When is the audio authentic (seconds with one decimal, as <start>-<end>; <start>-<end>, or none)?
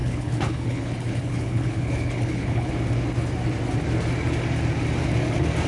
2.7-5.7